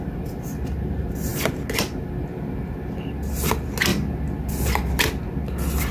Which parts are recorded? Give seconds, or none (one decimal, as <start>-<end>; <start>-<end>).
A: 0.0-5.9